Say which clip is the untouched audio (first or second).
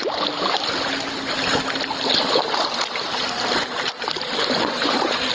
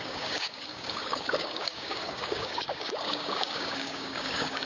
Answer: first